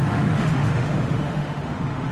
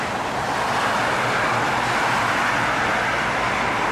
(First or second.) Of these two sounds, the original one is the second